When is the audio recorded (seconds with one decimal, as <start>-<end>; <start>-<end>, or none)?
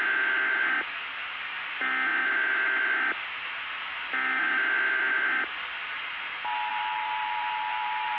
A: 0.0-6.7